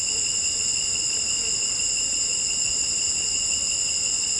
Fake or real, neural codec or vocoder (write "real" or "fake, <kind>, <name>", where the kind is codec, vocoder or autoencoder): real